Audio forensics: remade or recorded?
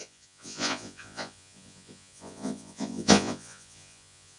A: remade